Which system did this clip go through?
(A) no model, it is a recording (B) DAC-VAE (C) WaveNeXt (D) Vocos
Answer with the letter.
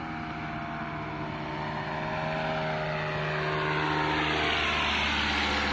A